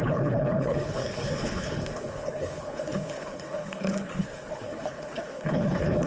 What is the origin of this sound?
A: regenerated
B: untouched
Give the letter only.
A